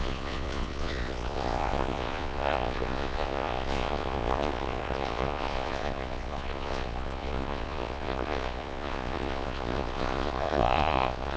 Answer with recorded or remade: remade